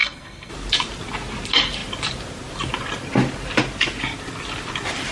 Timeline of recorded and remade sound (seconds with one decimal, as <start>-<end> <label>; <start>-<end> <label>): 0.0-0.5 remade; 0.5-5.1 recorded